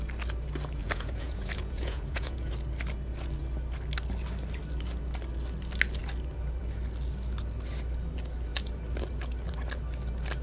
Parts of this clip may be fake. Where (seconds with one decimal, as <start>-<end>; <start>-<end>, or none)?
0.8-2.5